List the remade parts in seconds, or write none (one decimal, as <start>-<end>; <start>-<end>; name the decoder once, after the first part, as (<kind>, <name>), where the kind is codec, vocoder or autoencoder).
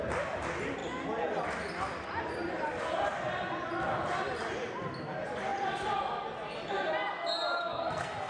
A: 7.6-8.3 (codec, SNAC)